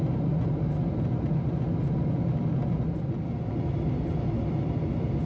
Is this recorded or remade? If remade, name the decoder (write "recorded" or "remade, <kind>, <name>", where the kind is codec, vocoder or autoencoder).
recorded